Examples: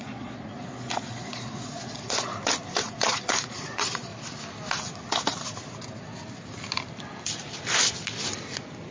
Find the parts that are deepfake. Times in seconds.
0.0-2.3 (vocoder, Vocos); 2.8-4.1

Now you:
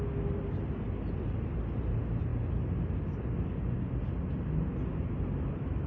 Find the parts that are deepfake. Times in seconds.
none

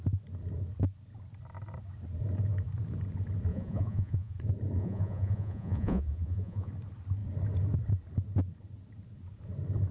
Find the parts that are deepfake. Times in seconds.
3.5-4.3 (vocoder, Vocos); 4.8-6.7

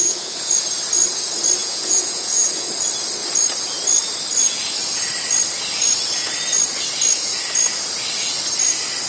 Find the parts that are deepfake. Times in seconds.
0.0-0.5 (vocoder, Vocos); 1.6-2.7

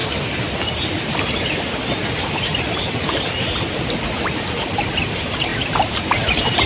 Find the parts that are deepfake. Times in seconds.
none

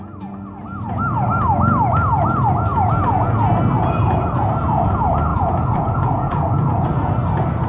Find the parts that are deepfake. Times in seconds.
5.3-7.1 (vocoder, Vocos)

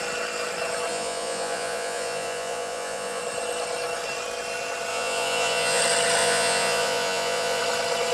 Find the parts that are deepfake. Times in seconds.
0.9-3.2 (vocoder, Vocos); 4.9-5.8; 6.2-7.6

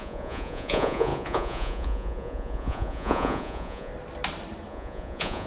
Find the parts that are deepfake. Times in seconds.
0.0-3.9 (vocoder, Vocos); 4.7-5.5